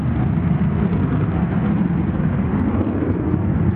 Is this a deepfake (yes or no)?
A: no